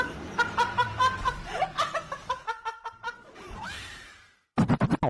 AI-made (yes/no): yes